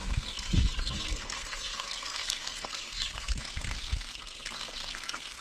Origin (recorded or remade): remade